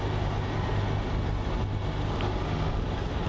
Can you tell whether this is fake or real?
real